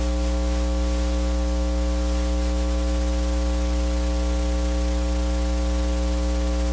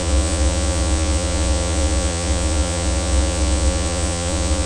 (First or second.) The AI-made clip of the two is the second